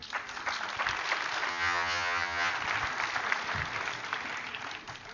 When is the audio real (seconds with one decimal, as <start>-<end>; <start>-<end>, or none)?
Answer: 0.0-1.5; 2.5-5.1